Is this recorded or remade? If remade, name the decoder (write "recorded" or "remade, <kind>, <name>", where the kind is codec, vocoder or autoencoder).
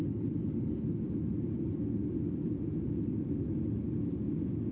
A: recorded